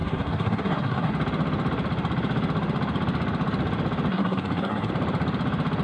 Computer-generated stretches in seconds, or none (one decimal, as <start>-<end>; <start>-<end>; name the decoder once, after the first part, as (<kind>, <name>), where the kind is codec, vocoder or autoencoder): 0.0-1.1 (codec, SNAC); 4.1-4.9